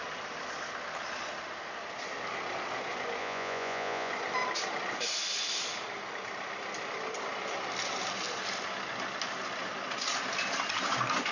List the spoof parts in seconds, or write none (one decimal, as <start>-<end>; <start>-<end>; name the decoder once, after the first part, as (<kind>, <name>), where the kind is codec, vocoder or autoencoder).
3.2-4.1 (vocoder, Vocos)